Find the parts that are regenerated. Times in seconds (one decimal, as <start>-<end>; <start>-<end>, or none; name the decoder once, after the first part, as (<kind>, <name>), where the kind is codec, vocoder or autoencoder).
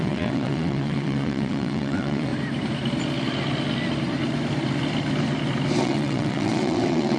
0.0-2.3 (vocoder, WaveNeXt); 5.8-7.2